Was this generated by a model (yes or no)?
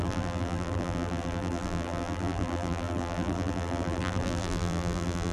yes